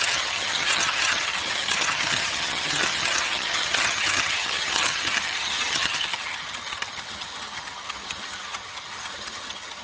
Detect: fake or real fake